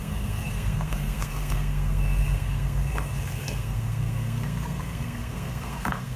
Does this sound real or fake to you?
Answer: fake